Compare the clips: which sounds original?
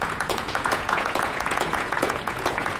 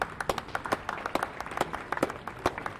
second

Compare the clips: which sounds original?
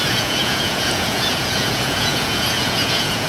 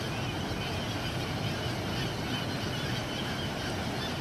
second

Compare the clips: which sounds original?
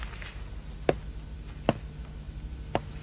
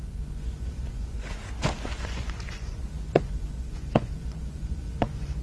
first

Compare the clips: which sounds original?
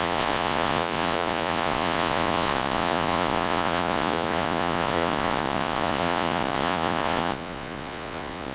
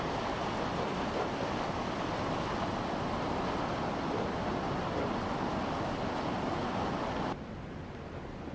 second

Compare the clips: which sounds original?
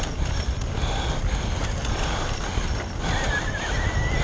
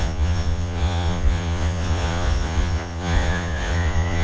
first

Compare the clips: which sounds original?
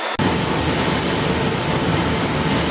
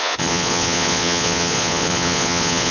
first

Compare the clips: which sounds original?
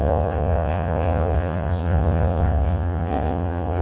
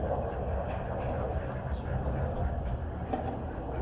second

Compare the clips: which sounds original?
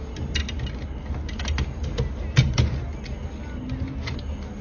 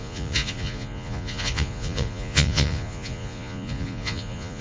first